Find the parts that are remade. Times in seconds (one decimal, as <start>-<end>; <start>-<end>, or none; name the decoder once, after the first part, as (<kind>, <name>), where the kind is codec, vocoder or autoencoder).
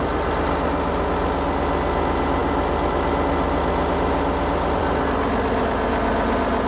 none